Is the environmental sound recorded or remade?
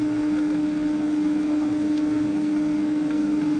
remade